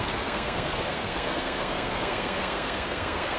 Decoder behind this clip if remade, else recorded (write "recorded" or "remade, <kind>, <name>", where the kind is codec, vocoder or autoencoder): remade, codec, SNAC